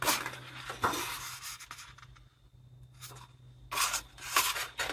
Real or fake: real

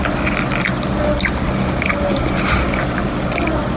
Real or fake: real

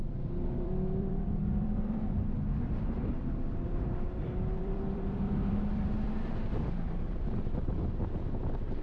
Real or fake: fake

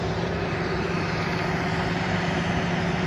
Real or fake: fake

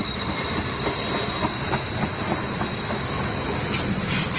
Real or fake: real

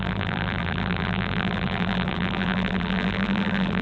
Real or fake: fake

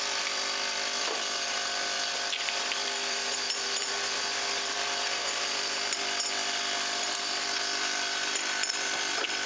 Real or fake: fake